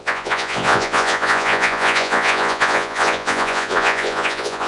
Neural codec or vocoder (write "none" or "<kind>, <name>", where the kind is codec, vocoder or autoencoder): vocoder, Vocos